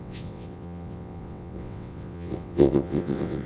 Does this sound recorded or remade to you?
remade